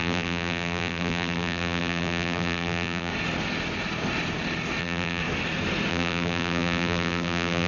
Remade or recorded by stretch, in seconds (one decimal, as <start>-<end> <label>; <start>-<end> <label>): 0.0-3.1 remade; 3.1-4.8 recorded; 4.8-5.2 remade; 5.2-5.9 recorded; 5.9-7.7 remade